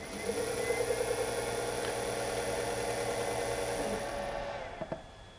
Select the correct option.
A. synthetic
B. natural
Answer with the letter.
B